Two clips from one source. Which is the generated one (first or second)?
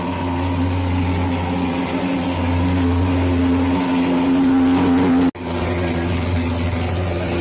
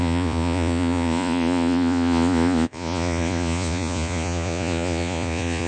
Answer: second